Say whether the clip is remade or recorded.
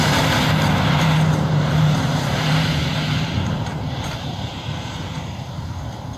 remade